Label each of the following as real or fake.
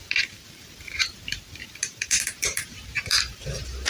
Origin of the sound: fake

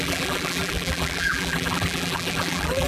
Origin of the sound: fake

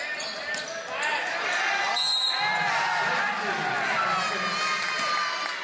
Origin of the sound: real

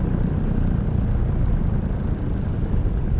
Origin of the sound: real